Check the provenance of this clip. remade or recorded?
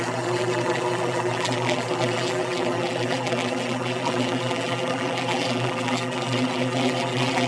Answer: remade